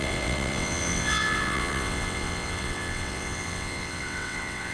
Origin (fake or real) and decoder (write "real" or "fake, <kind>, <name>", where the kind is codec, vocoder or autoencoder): fake, vocoder, WaveNeXt